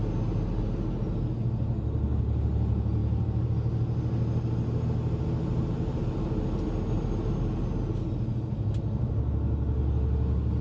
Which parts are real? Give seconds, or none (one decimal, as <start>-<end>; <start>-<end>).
0.0-3.0; 3.5-10.6